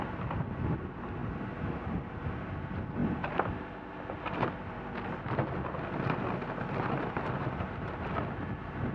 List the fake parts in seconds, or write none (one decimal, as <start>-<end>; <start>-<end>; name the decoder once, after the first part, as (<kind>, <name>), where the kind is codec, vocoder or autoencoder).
none